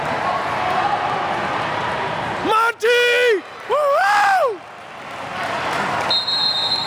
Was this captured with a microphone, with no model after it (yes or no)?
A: yes